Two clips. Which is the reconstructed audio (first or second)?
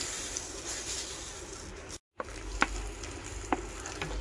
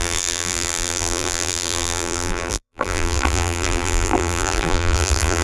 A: second